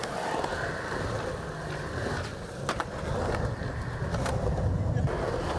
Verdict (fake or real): real